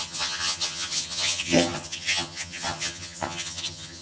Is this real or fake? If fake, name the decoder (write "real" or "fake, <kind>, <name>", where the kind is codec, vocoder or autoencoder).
fake, vocoder, HiFi-GAN